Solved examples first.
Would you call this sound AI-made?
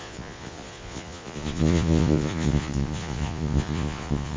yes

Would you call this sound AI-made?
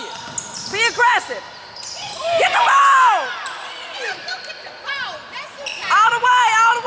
no